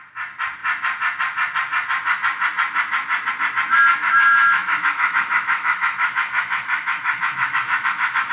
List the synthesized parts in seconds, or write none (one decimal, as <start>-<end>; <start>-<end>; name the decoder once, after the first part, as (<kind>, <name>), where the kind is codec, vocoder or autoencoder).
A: 3.9-8.3 (autoencoder, DAC-VAE)